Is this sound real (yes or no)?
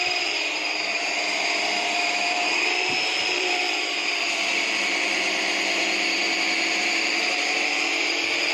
no